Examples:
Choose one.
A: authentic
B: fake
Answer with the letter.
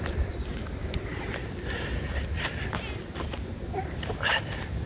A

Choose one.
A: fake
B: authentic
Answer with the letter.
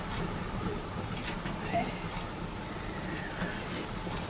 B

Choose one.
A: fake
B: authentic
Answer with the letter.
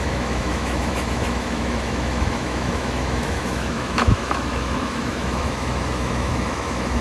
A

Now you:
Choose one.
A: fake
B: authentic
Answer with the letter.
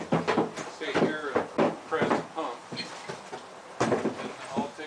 B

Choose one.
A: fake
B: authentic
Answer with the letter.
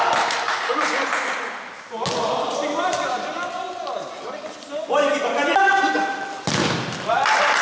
B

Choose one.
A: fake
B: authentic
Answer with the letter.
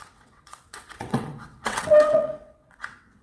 A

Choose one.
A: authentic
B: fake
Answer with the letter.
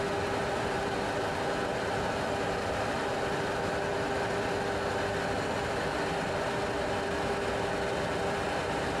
A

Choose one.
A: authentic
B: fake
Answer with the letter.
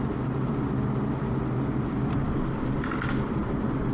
A